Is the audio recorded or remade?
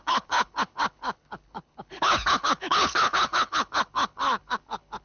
remade